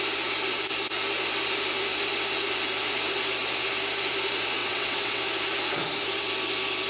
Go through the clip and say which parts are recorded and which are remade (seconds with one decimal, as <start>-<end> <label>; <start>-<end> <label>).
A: 0.0-4.6 recorded; 4.6-5.2 remade; 5.2-6.9 recorded